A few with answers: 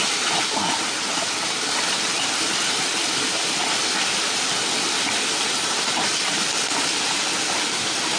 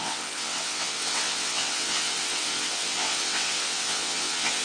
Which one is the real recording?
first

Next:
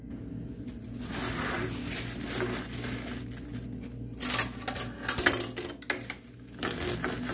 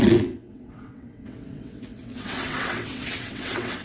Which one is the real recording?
first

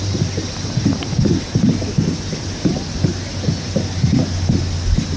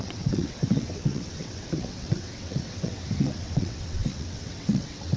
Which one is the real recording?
first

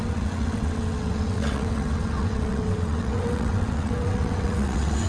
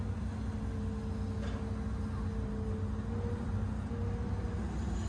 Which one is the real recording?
second